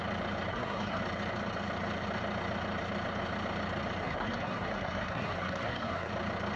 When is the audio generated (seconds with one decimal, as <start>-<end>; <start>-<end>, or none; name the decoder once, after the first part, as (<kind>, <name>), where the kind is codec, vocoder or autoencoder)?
0.5-1.0 (codec, SNAC); 4.0-6.1